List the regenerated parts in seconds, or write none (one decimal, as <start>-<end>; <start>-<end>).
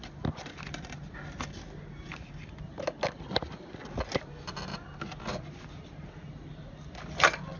none